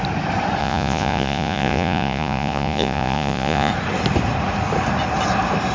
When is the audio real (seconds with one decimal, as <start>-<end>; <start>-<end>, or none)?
0.0-0.6; 3.7-5.7